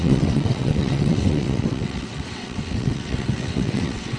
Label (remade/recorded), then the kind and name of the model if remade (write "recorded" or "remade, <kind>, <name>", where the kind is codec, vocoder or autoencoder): remade, vocoder, WaveNeXt